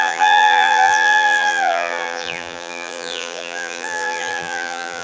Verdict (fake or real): fake